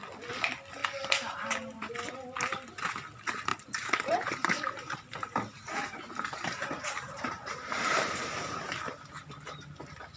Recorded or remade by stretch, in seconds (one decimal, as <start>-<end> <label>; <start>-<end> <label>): 0.0-0.8 recorded; 0.8-1.9 remade; 1.9-3.5 recorded; 3.5-8.2 remade; 8.2-10.2 recorded